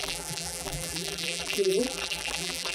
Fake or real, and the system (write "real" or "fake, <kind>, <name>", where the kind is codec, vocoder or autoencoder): fake, vocoder, BigVGAN v2